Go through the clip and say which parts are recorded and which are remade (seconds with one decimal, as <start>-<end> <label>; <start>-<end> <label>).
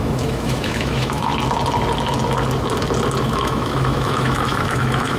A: 0.0-1.3 remade; 1.3-3.2 recorded; 3.2-5.2 remade